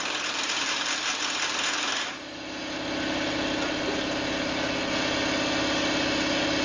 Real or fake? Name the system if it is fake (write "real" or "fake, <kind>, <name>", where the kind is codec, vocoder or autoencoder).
real